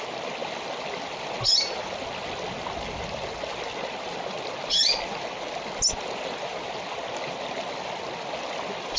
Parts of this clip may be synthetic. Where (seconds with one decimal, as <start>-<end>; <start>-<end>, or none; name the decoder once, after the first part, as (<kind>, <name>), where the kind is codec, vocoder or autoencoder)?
none